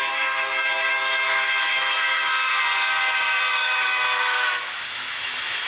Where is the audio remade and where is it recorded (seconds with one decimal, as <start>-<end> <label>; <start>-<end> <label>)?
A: 0.0-2.5 remade; 2.5-3.5 recorded; 3.5-5.7 remade

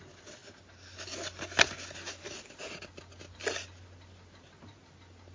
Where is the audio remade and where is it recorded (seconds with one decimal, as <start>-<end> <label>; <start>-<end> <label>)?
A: 0.0-5.3 recorded

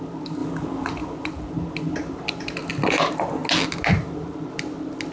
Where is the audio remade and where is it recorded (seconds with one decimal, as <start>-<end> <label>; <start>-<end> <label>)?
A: 0.0-5.1 recorded

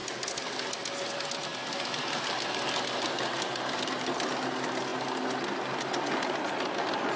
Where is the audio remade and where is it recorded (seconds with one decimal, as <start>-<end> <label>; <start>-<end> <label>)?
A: 0.0-7.2 recorded

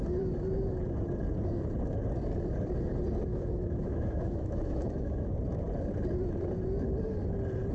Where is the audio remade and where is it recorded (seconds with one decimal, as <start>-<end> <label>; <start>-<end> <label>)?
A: 0.0-3.3 recorded; 3.3-5.3 remade; 5.3-7.7 recorded

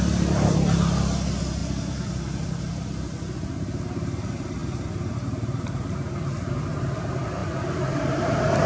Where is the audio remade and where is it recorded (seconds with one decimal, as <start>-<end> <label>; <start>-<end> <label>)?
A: 0.0-8.7 recorded

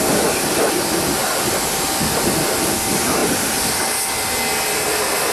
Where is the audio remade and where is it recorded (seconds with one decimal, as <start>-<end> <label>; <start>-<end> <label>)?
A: 0.0-5.3 recorded